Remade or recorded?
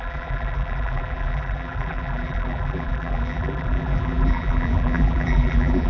remade